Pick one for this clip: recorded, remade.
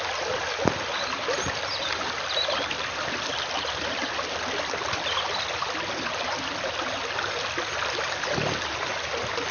recorded